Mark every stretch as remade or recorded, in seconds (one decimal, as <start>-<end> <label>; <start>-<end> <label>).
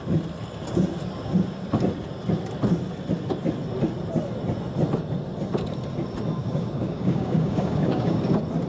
0.0-6.4 recorded; 6.4-8.2 remade; 8.2-8.7 recorded